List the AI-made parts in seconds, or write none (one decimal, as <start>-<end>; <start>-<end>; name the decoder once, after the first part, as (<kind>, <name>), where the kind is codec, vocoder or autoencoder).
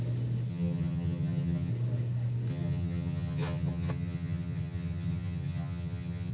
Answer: 0.5-1.7 (vocoder, HiFi-GAN); 2.5-6.3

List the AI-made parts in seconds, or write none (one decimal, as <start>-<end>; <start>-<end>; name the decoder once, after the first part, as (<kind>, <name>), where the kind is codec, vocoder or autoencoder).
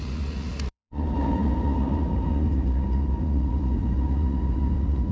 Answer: 0.0-5.1 (vocoder, Vocos)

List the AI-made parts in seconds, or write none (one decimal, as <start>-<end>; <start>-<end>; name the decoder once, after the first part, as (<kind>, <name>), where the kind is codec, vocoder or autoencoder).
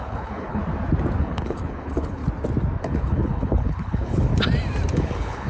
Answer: 0.0-0.6 (codec, HILCodec); 1.2-2.2; 2.8-4.3; 4.9-5.5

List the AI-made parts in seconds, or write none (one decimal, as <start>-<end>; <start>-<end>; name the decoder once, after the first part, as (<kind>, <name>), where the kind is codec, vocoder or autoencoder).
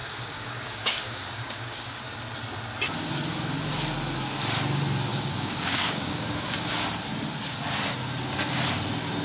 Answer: 0.0-2.0 (codec, DAC); 5.1-6.7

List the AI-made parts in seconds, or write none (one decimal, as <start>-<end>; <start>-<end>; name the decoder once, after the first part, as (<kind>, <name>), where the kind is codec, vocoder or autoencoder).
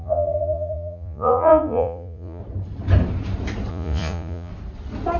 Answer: 0.0-2.4 (vocoder, Vocos); 3.7-4.5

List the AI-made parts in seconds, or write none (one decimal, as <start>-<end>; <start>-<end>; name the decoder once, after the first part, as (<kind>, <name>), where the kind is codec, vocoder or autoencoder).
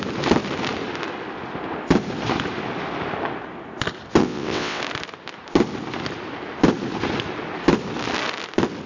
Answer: 4.2-4.8 (vocoder, WaveNeXt)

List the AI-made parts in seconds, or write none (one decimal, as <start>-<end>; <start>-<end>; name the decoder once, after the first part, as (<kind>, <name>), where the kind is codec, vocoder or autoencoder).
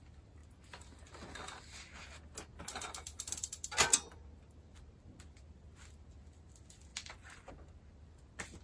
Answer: 6.9-7.5 (vocoder, BigVGAN v2)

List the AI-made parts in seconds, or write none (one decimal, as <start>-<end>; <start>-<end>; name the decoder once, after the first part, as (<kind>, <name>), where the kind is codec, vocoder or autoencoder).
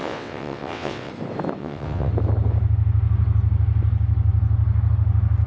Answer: 0.0-1.1 (vocoder, WaveNeXt); 1.6-2.1